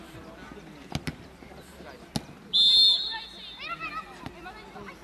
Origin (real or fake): real